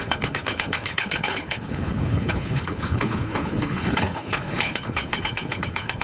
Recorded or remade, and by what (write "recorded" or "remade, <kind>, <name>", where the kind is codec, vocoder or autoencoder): remade, codec, HILCodec